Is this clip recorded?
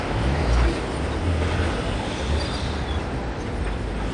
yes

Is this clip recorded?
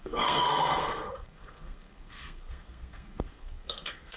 no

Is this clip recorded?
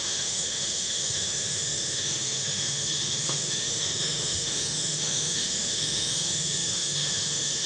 no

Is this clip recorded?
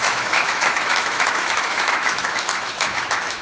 no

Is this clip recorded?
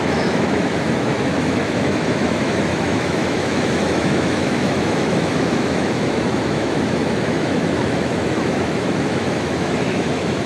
no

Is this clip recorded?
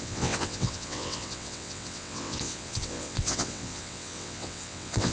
no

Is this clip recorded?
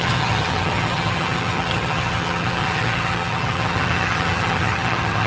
no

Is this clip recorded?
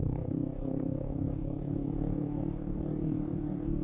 no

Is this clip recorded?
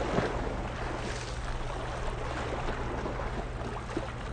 yes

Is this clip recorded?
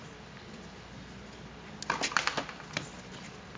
yes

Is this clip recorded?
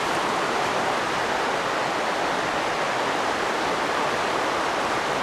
yes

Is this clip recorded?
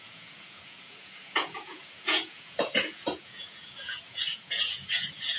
no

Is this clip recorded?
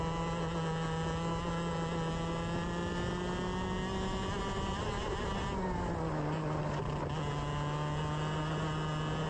yes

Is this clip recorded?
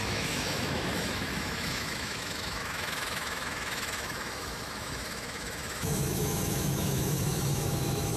no